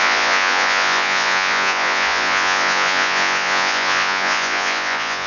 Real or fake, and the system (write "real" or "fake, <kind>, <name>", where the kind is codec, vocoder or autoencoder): fake, vocoder, Vocos